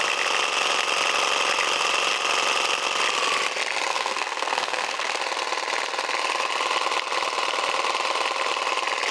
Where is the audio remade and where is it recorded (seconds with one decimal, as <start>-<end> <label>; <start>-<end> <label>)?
0.0-3.9 recorded; 3.9-5.2 remade; 5.2-9.1 recorded